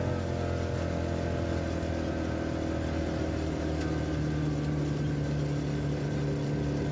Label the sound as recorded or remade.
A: recorded